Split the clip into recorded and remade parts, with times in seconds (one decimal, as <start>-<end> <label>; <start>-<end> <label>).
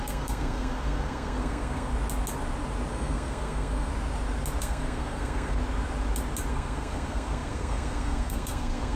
0.0-1.9 remade; 1.9-2.9 recorded; 2.9-3.9 remade; 3.9-4.6 recorded; 4.6-5.6 remade; 5.6-6.5 recorded; 6.5-9.0 remade